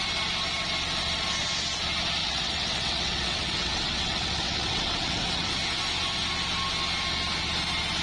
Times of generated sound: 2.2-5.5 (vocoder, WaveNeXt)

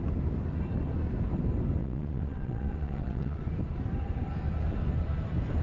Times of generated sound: 1.8-3.4 (vocoder, WaveNeXt)

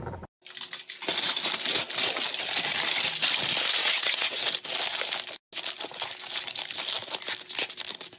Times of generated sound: 3.8-4.4 (vocoder, WaveNeXt)

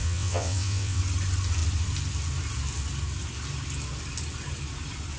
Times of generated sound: 0.0-1.0 (vocoder, WaveNeXt)